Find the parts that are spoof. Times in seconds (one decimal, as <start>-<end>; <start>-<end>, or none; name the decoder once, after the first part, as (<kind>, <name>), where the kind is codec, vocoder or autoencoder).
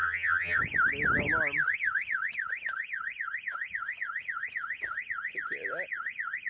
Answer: 0.0-0.6 (vocoder, HiFi-GAN)